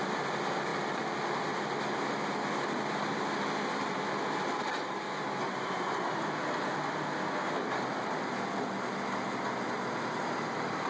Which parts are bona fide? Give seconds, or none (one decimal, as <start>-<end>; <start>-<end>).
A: 0.0-10.9